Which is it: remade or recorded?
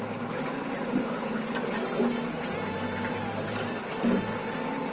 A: recorded